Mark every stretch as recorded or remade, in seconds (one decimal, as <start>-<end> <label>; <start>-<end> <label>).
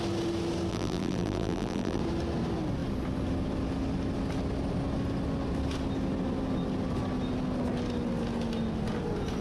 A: 0.0-0.7 recorded; 0.7-2.0 remade; 2.0-9.4 recorded